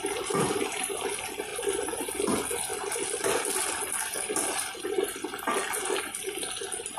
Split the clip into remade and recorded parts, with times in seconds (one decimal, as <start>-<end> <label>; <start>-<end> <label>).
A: 0.0-0.4 recorded; 0.4-1.0 remade; 1.0-7.0 recorded